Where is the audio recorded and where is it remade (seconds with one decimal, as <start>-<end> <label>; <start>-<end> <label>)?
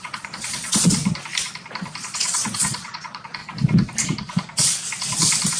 0.0-1.0 remade; 1.0-2.0 recorded; 2.0-3.4 remade; 3.4-5.6 recorded